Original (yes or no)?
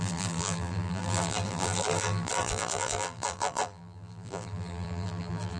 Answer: no